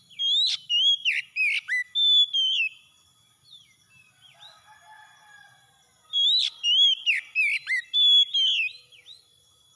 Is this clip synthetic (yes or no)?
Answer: no